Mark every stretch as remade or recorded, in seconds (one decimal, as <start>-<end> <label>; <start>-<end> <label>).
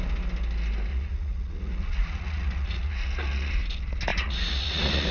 0.0-0.9 recorded; 0.9-3.6 remade; 3.6-4.1 recorded; 4.1-5.1 remade